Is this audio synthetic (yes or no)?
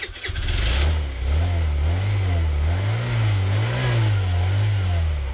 no